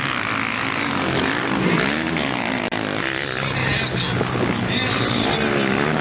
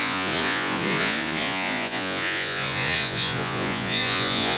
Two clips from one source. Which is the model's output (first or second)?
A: second